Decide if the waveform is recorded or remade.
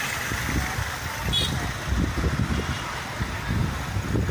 recorded